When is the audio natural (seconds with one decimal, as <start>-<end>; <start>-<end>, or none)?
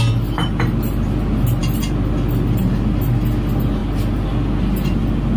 0.0-5.4